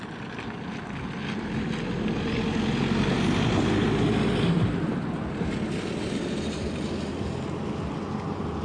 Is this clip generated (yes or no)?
no